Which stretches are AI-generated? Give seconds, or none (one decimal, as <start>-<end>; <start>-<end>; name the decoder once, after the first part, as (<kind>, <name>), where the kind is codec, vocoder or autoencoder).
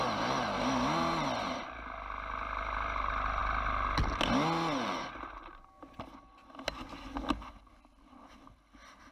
none